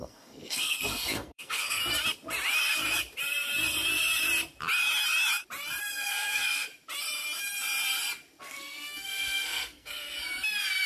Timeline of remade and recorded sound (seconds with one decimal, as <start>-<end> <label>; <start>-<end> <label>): 0.0-1.8 remade; 1.8-5.8 recorded; 5.8-6.7 remade; 6.7-8.4 recorded; 8.4-10.1 remade; 10.1-10.9 recorded